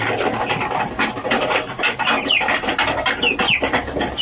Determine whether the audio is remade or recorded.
recorded